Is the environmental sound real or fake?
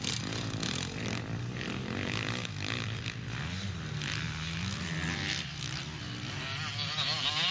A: real